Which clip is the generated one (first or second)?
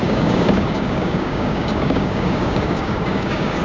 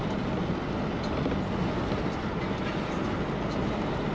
first